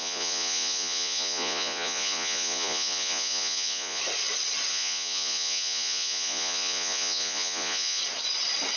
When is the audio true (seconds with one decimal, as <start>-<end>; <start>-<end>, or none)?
4.0-4.7; 8.0-8.8

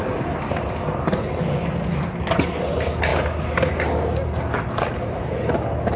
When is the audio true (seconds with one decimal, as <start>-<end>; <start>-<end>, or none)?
0.0-6.0

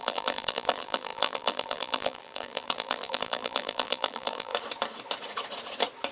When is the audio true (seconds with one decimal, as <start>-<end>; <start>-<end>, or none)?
4.5-6.1

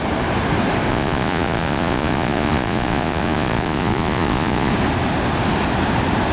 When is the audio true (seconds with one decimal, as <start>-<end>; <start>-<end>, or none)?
0.0-0.9; 4.7-6.3

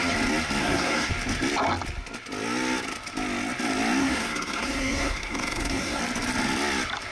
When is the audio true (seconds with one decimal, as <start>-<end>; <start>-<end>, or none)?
0.0-0.6; 1.1-4.0; 6.0-7.1